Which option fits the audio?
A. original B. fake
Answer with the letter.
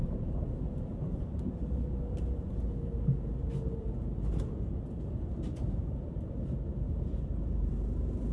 B